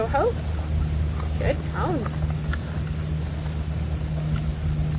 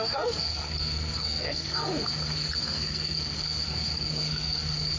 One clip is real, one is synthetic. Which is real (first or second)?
first